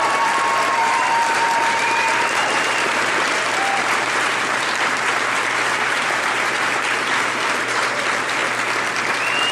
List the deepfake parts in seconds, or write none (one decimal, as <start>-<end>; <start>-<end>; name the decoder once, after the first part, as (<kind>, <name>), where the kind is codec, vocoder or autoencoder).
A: 0.0-8.4 (vocoder, BigVGAN v2); 9.1-9.5